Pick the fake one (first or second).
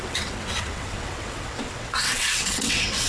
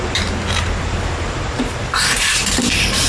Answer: first